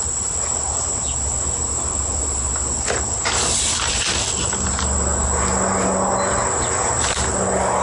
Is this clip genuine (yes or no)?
yes